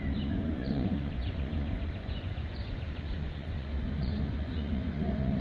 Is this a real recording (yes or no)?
no